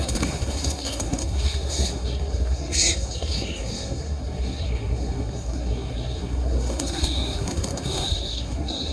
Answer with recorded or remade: remade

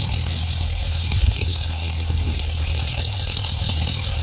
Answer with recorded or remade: remade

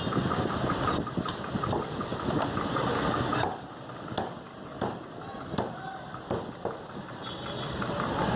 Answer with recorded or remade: recorded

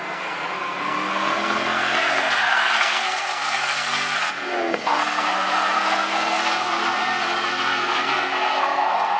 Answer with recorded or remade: remade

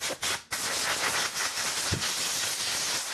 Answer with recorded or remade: recorded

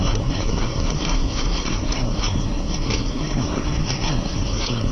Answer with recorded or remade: remade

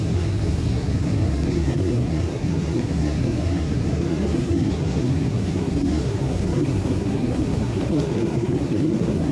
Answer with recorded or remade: remade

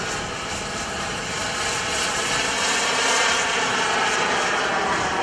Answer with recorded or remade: recorded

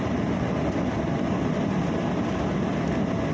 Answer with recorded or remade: recorded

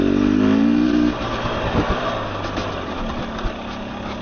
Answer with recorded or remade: recorded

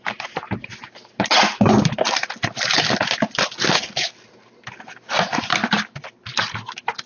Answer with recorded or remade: recorded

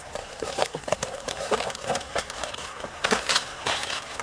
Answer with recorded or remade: remade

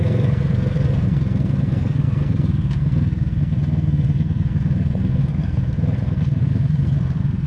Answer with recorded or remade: remade